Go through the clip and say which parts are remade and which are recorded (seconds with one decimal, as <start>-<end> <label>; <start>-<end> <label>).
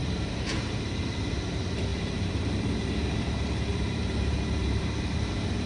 0.0-1.3 remade; 1.3-1.9 recorded; 1.9-5.3 remade; 5.3-5.7 recorded